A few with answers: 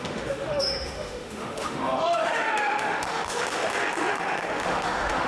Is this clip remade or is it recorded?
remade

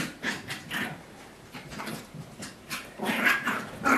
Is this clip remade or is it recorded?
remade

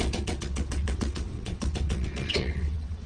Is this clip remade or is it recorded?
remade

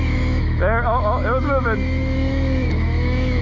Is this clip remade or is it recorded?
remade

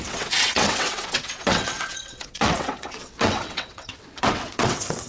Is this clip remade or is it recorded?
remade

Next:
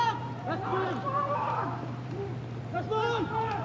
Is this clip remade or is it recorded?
remade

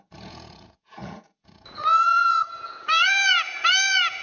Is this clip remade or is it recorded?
remade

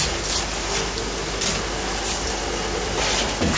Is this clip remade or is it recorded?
recorded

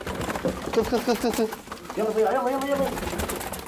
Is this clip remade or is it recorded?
recorded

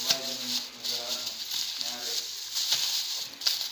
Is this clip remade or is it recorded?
recorded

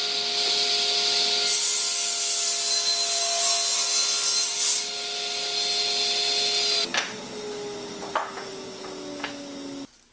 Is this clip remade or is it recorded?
recorded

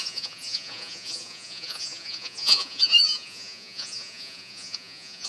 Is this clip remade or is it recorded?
remade